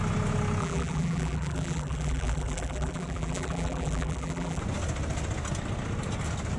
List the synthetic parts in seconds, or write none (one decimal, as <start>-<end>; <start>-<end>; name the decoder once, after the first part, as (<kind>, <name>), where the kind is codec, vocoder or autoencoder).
0.6-4.6 (vocoder, BigVGAN v2)

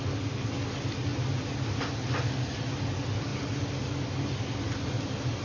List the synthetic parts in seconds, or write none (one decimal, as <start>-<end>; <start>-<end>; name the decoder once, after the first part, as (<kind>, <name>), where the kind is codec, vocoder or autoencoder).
none